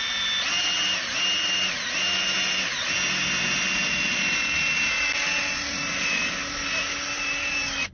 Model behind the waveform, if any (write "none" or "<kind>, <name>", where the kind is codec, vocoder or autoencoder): none